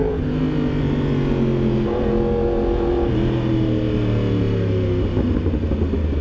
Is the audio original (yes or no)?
yes